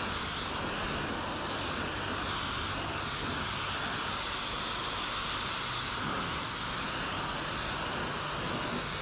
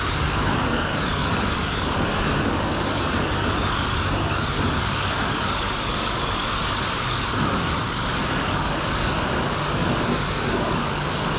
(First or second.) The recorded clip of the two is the first